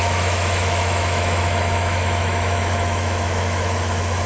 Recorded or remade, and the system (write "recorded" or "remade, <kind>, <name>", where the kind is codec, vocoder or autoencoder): remade, autoencoder, DAC-VAE